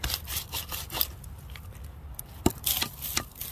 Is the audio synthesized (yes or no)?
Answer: no